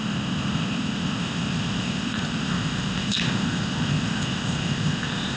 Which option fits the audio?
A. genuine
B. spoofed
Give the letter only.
B